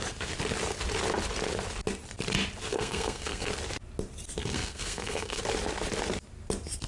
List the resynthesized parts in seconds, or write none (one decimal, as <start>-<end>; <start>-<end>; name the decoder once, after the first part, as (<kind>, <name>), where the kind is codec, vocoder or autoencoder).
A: 2.7-3.5 (codec, SNAC); 4.4-5.4